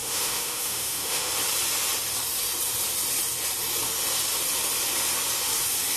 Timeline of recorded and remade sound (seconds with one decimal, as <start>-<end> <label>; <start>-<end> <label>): 0.0-1.3 remade; 1.3-6.0 recorded